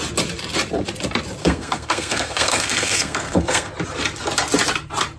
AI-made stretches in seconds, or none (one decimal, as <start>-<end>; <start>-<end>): 1.4-3.7